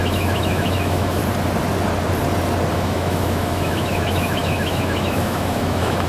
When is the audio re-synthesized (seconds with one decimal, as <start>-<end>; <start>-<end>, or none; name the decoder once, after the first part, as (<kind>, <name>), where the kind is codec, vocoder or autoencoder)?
0.0-1.2 (autoencoder, DAC-VAE); 2.7-6.1

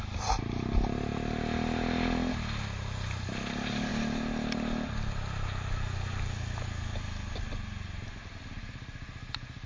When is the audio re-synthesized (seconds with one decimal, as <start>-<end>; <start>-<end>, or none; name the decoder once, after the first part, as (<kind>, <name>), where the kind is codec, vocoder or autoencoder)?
none

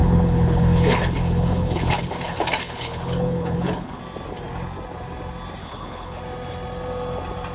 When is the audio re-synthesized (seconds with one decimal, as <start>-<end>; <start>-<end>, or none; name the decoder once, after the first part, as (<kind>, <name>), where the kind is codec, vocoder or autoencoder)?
0.0-4.0 (codec, HILCodec); 5.6-6.2

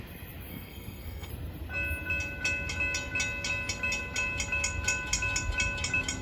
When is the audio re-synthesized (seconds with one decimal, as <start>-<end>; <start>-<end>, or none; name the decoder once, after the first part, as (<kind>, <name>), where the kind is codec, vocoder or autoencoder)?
0.5-1.3 (codec, SNAC)

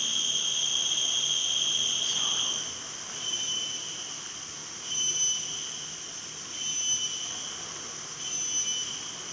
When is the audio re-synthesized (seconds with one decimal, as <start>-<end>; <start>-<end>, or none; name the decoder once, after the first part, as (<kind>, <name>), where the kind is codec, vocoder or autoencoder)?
none